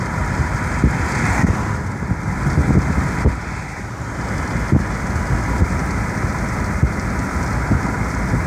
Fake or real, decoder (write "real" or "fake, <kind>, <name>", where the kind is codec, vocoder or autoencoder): real